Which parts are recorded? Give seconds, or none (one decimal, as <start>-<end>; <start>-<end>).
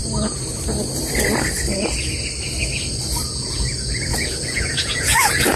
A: 0.0-3.3